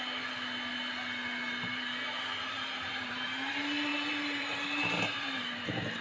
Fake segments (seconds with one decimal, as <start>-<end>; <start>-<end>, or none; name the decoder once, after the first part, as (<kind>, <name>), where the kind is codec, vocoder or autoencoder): 1.7-3.5 (vocoder, BigVGAN v2); 3.9-6.0